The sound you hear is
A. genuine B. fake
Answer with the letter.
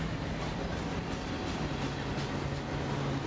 A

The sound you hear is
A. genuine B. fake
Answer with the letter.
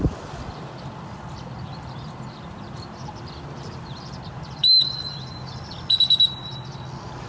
B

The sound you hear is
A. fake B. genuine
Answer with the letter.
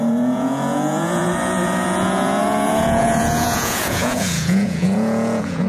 A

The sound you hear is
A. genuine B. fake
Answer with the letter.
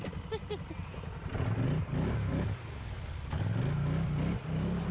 A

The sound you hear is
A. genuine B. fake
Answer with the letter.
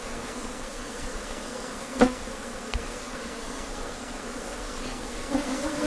B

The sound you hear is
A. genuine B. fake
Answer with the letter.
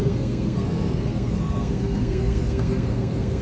B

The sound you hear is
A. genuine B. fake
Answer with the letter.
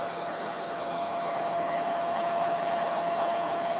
B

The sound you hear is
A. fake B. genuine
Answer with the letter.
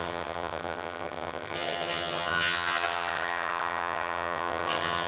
A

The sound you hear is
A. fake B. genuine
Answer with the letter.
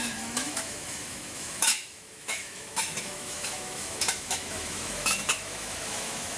A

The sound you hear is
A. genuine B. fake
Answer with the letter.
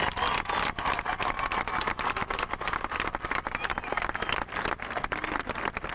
A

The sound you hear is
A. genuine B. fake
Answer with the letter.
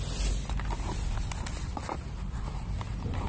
A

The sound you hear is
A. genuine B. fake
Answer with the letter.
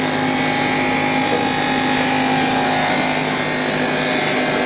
A